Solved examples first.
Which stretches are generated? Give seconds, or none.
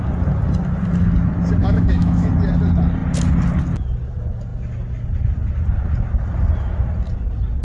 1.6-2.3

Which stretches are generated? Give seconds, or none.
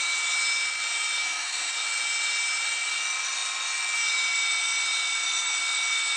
1.2-1.7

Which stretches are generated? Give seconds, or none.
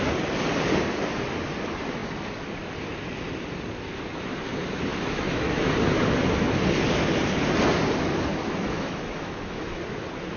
4.9-5.7; 8.3-9.8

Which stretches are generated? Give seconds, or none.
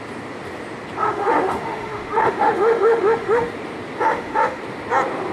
1.0-3.5; 4.1-4.6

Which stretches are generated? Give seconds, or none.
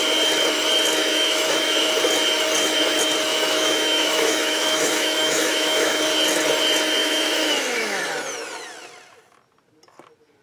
1.1-1.9; 3.3-6.0; 7.0-8.0